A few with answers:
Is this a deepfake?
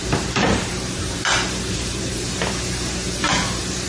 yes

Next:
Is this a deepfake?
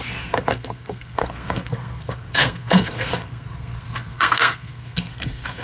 yes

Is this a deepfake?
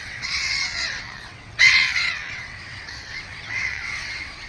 yes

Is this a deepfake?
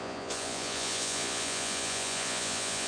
yes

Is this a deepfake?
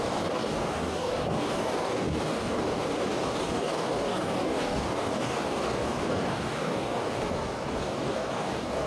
yes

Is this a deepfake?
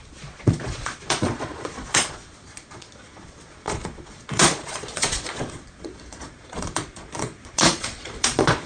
yes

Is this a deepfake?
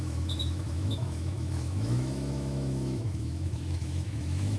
yes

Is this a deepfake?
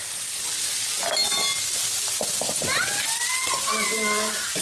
no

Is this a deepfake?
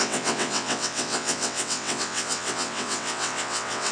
yes